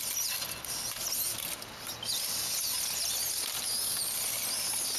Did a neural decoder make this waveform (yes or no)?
no